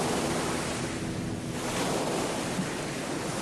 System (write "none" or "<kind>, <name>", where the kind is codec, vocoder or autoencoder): vocoder, BigVGAN v2